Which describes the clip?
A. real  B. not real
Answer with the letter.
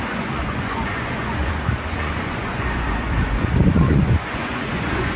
B